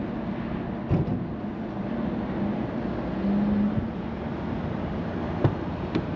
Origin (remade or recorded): recorded